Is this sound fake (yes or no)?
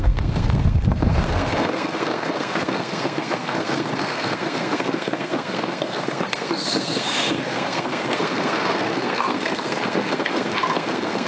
yes